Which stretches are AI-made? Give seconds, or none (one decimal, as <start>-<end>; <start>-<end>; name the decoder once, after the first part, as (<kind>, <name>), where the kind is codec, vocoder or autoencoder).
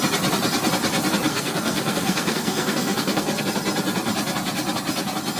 1.3-3.4 (codec, SNAC)